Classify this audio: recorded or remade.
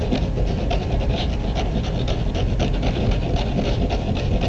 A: recorded